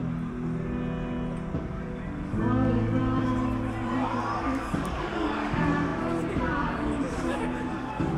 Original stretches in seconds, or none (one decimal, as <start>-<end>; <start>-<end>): 0.0-1.7; 3.0-4.4